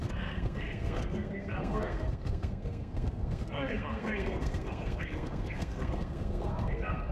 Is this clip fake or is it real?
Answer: fake